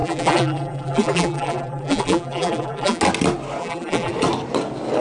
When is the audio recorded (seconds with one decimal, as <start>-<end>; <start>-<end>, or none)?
3.0-3.6; 4.1-5.0